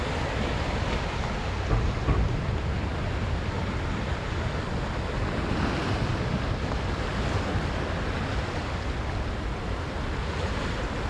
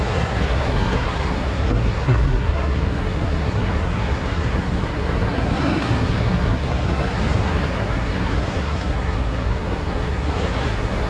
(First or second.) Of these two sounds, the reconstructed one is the second